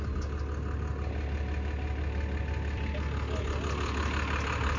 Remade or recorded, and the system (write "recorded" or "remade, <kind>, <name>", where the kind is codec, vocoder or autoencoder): recorded